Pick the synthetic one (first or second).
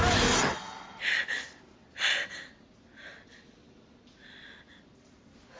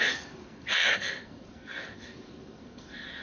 second